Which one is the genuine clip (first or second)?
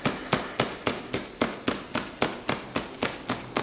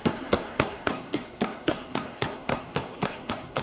first